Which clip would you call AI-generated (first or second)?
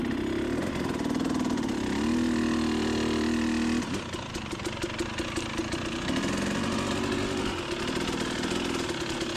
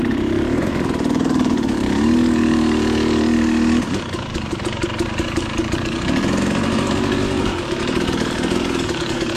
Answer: second